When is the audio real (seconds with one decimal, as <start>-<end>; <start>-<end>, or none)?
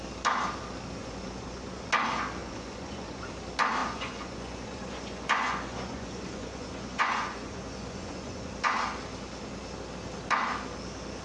0.0-1.0; 1.9-2.4; 3.3-3.8; 8.5-11.2